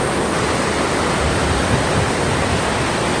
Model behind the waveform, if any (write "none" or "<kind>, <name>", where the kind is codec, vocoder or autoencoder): none